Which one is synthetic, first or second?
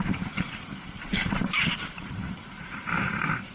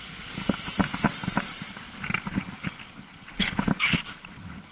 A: first